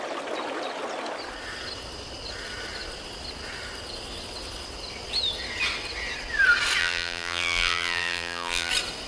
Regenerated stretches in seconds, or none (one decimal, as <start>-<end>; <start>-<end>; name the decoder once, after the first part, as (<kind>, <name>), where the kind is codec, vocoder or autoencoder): 6.8-8.7 (vocoder, BigVGAN v2)